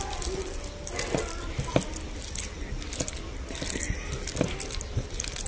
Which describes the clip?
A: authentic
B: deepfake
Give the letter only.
A